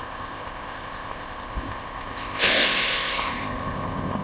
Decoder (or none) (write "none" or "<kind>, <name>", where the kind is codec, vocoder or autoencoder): codec, ZipCodec